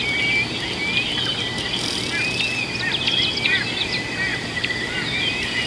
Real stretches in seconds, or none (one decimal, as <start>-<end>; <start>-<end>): 0.0-4.3